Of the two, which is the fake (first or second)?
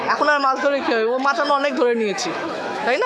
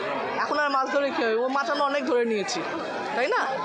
first